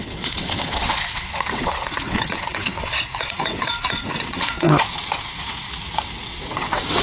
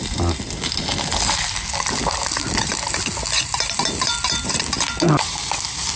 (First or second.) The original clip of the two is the second